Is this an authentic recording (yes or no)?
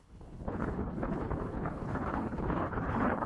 no